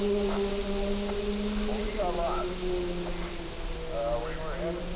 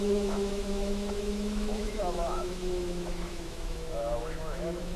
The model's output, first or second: second